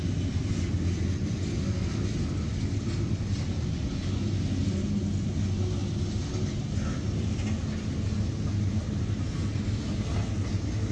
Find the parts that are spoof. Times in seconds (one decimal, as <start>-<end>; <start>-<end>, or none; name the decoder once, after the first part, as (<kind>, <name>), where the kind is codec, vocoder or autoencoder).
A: none